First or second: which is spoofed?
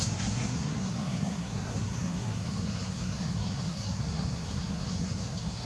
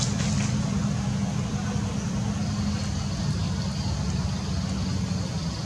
first